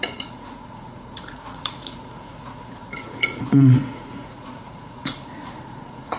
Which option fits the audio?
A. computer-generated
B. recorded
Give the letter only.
A